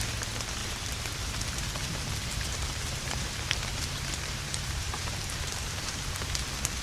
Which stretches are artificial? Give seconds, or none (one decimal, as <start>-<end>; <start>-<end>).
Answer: 0.6-1.5; 2.3-6.1